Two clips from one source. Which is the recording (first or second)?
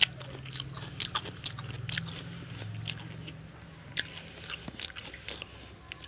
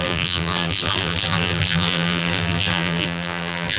first